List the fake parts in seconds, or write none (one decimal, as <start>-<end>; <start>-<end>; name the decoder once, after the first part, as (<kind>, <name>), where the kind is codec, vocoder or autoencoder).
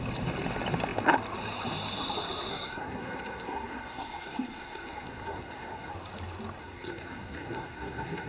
2.5-5.9 (codec, SNAC); 6.6-8.3